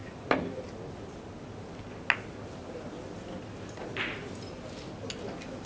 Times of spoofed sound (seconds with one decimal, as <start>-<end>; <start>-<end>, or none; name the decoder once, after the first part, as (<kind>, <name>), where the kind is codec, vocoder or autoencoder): none